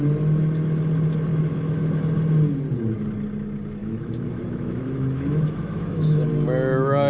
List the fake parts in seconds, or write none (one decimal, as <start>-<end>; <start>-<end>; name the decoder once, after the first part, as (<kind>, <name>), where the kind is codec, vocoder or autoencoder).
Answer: 1.3-2.0 (autoencoder, DAC-VAE); 3.8-6.3